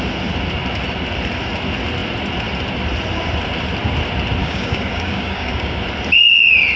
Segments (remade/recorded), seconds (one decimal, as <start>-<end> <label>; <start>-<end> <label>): 0.0-4.4 recorded; 4.4-5.8 remade; 5.8-6.8 recorded